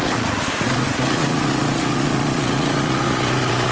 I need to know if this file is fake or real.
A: fake